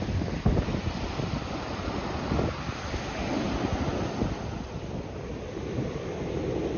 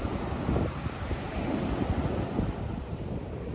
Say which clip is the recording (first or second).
first